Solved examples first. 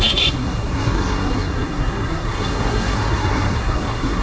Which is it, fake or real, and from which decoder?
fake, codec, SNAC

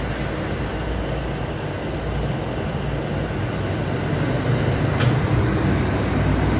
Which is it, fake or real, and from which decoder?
real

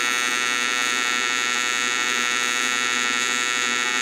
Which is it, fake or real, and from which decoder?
real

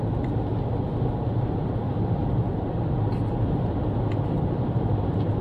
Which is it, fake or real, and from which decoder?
real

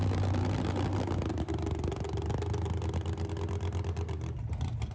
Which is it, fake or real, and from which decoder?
real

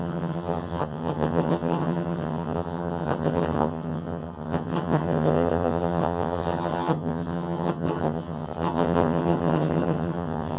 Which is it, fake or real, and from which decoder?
fake, vocoder, HiFi-GAN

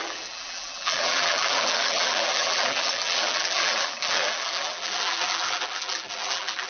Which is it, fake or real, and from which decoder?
fake, vocoder, BigVGAN v2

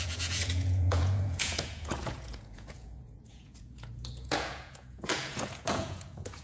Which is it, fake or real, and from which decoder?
fake, vocoder, Vocos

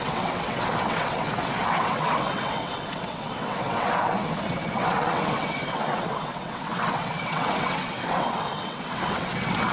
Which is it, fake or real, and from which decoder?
fake, vocoder, WaveNeXt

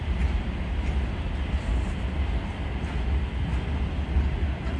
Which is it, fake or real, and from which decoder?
real